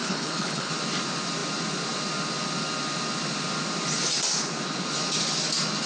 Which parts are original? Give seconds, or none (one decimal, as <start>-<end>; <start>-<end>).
0.7-5.9